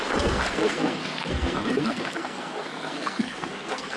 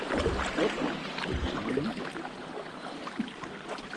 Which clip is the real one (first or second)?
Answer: second